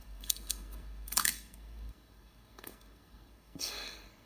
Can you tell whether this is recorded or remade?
remade